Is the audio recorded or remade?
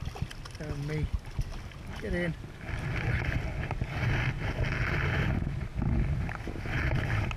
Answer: recorded